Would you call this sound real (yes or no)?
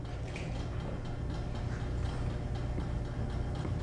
yes